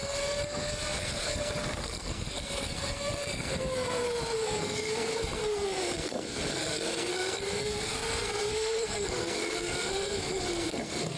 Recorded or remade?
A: remade